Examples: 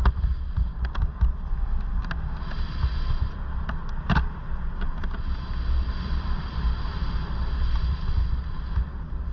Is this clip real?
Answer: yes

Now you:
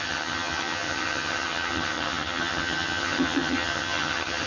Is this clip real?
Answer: no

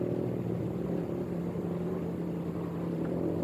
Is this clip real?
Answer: no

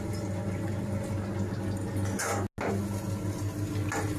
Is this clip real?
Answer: yes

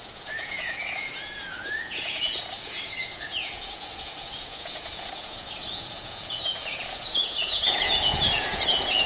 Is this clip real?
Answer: no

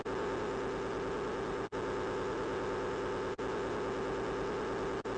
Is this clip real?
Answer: yes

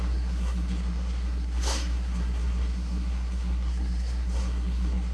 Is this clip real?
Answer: no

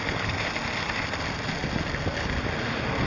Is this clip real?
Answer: yes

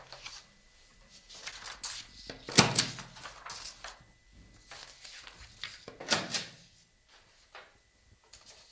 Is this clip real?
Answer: yes